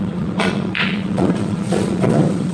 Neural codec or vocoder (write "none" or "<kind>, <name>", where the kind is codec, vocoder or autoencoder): vocoder, Vocos